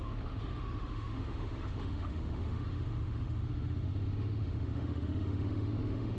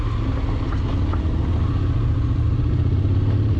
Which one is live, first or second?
second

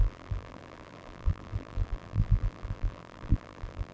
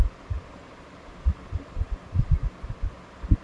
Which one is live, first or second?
second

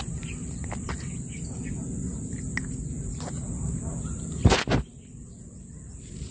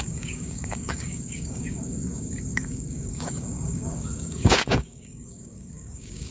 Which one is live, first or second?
first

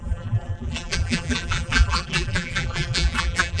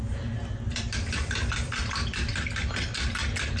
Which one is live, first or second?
second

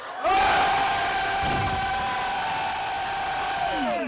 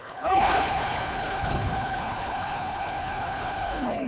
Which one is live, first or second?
first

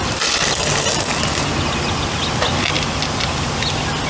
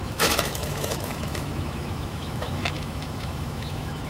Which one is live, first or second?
first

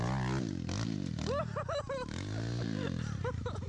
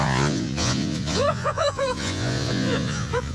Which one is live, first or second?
first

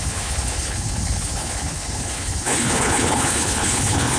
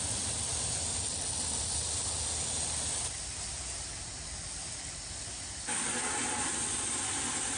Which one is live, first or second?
second